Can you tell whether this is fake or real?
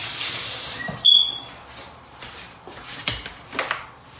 real